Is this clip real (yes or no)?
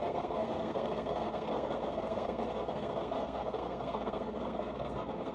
no